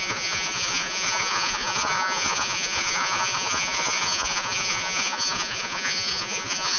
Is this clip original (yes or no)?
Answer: no